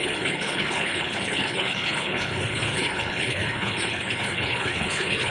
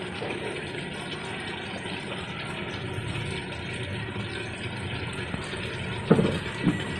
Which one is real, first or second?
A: second